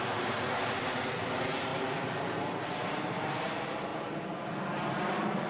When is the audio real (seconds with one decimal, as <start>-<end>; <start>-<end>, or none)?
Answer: 0.0-5.5